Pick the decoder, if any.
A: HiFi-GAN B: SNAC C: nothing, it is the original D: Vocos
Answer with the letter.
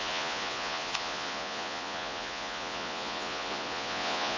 D